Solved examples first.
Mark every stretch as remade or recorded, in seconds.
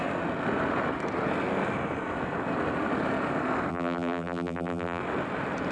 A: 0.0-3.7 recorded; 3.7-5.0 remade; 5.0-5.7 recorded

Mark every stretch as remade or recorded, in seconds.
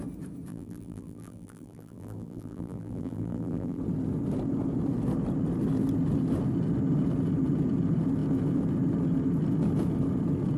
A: 0.0-0.5 recorded; 0.5-3.8 remade; 3.8-10.6 recorded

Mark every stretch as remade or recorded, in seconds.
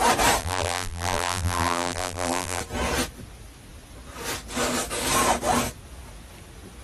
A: 0.0-0.4 recorded; 0.4-2.6 remade; 2.6-6.8 recorded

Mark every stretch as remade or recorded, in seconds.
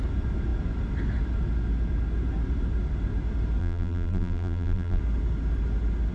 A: 0.0-3.6 recorded; 3.6-5.0 remade; 5.0-6.1 recorded